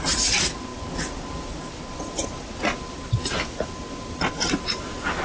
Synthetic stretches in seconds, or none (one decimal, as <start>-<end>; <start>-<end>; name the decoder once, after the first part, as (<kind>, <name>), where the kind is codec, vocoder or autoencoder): none